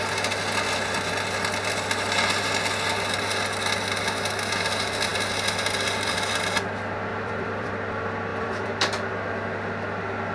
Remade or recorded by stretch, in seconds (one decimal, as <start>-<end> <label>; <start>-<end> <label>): 0.0-7.1 recorded; 7.1-7.7 remade; 7.7-8.3 recorded; 8.3-9.1 remade; 9.1-10.3 recorded